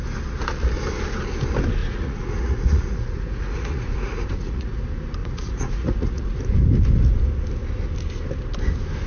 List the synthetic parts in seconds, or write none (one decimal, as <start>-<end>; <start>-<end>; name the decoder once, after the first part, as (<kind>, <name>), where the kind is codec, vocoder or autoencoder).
1.8-4.8 (vocoder, Vocos); 5.2-6.4